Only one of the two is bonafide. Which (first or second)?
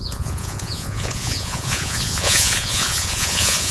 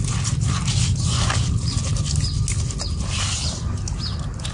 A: second